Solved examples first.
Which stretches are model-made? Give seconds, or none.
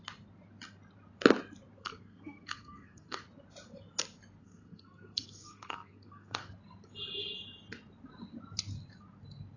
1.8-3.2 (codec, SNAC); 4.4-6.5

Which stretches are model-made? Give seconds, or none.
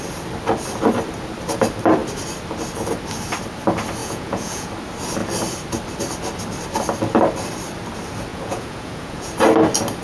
4.0-4.7 (vocoder, Vocos); 8.3-9.3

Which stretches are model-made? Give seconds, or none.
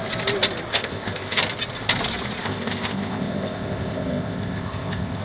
0.7-1.4 (codec, ZipCodec); 2.4-5.2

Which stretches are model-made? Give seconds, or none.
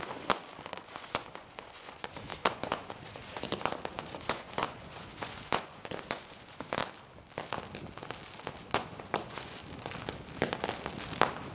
0.0-6.8 (vocoder, Vocos); 8.6-9.6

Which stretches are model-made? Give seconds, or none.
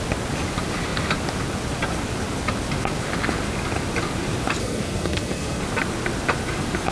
4.6-5.6 (codec, SNAC)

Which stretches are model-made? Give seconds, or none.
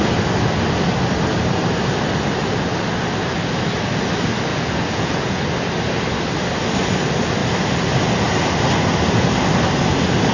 4.5-5.4 (vocoder, Vocos)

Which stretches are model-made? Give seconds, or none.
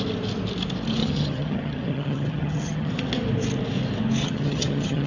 1.0-2.9 (vocoder, HiFi-GAN); 4.2-5.1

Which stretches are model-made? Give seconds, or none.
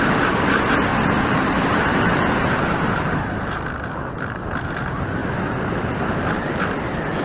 0.9-3.2 (vocoder, BigVGAN v2); 5.2-6.5